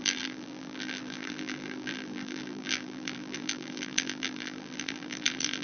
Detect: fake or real fake